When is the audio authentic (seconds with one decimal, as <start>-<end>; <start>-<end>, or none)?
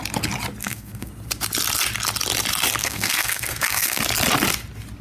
0.0-0.6; 1.1-2.8; 4.0-5.0